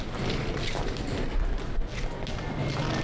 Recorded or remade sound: recorded